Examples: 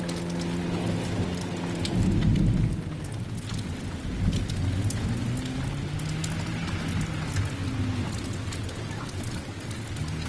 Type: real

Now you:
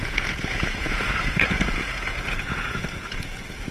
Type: fake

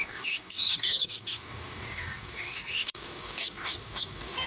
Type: fake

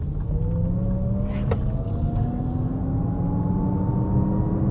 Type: real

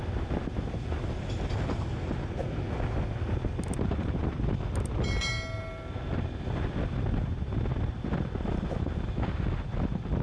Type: real